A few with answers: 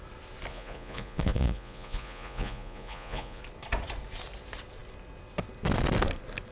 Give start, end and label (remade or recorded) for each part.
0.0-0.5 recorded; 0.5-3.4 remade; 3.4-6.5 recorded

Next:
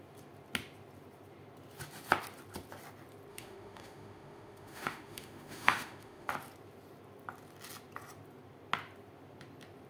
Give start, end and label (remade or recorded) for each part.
0.0-3.3 recorded; 3.3-6.3 remade; 6.3-9.9 recorded

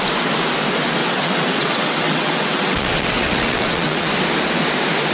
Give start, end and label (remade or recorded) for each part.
0.0-1.0 recorded; 1.0-4.1 remade; 4.1-5.1 recorded

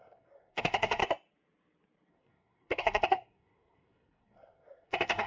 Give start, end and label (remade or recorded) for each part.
0.0-1.0 remade; 1.0-2.1 recorded; 2.1-5.3 remade